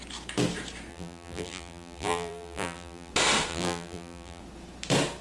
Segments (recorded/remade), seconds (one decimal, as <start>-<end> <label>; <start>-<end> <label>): 0.0-0.9 recorded; 0.9-3.1 remade; 3.1-3.5 recorded; 3.5-4.4 remade; 4.4-5.2 recorded